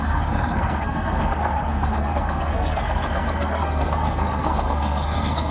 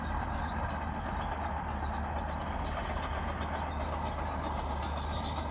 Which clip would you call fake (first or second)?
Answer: first